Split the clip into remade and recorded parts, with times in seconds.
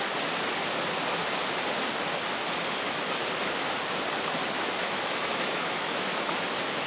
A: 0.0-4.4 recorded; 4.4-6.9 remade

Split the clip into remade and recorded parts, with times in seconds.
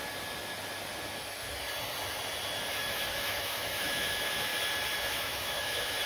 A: 0.0-2.8 recorded; 2.8-4.5 remade; 4.5-5.0 recorded; 5.0-6.1 remade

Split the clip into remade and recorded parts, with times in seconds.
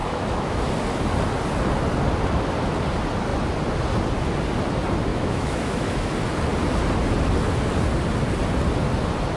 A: 0.0-0.6 remade; 0.6-5.1 recorded; 5.1-6.1 remade; 6.1-9.4 recorded